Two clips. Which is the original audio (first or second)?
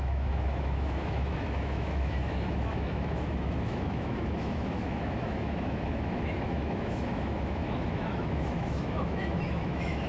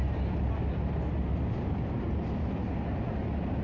second